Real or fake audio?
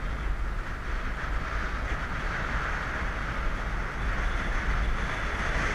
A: real